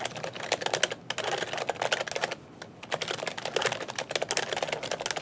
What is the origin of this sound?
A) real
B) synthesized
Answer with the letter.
A